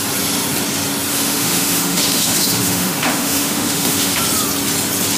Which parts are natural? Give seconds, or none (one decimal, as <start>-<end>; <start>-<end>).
0.0-1.1; 4.2-5.2